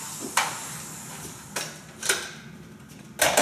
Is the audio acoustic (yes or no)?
yes